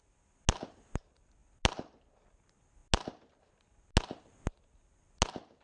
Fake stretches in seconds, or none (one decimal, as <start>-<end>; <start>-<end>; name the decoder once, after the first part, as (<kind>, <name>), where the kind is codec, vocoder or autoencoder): none